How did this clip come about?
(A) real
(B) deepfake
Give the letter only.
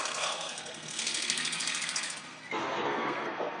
B